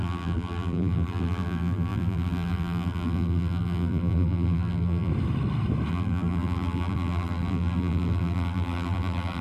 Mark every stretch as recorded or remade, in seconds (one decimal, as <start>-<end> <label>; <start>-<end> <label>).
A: 0.0-5.1 remade; 5.1-5.9 recorded; 5.9-9.4 remade